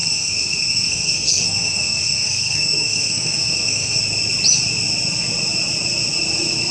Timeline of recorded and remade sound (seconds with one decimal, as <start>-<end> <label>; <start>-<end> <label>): 0.0-4.0 remade; 4.0-6.7 recorded